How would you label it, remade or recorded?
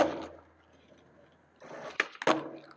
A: recorded